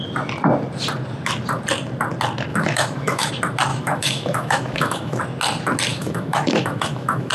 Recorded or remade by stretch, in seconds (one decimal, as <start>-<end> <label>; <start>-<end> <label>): 0.0-2.5 recorded; 2.5-3.3 remade; 3.3-3.7 recorded; 3.7-5.2 remade; 5.2-5.9 recorded; 5.9-7.3 remade